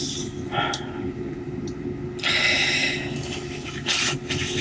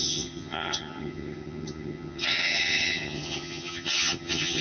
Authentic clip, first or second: first